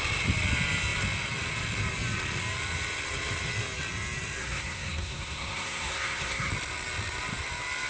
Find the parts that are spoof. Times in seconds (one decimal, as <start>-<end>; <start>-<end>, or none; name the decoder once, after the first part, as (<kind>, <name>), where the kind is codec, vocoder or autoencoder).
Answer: 4.4-6.5 (codec, SNAC)